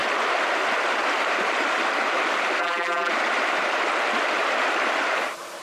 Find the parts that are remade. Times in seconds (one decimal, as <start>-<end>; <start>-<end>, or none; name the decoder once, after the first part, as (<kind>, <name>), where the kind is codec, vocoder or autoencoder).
2.6-3.1 (vocoder, BigVGAN v2)